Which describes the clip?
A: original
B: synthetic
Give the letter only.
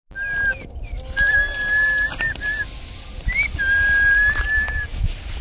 A